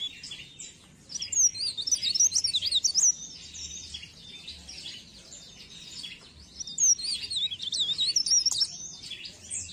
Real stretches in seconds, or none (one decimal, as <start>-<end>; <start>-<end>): 0.0-9.7